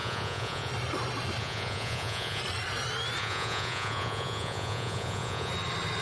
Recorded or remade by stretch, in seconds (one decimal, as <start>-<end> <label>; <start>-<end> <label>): 0.0-0.7 remade; 0.7-1.4 recorded; 1.4-2.4 remade; 2.4-3.2 recorded; 3.2-5.5 remade; 5.5-6.0 recorded